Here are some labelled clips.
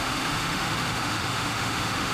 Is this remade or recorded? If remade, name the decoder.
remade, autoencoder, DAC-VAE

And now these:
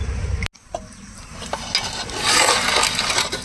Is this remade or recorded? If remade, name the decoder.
recorded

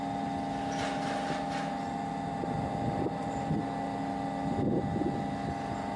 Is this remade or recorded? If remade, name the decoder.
recorded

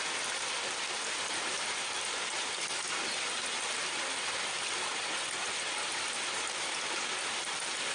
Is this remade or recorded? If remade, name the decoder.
recorded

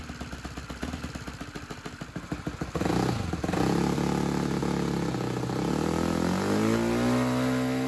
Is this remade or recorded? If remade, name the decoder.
recorded